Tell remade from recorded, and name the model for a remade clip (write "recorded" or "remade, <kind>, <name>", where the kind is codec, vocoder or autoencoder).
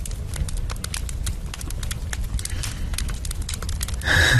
recorded